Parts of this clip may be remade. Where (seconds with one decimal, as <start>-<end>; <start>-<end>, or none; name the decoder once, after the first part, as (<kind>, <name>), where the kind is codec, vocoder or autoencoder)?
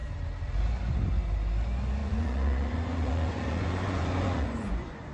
2.0-5.1 (vocoder, Vocos)